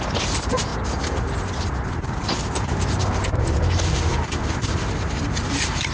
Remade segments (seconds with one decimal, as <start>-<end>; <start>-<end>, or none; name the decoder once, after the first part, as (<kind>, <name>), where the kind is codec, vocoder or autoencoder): 0.0-0.7 (vocoder, BigVGAN v2); 1.8-5.9